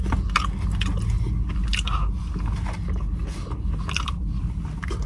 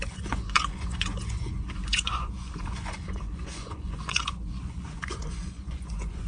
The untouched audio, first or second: first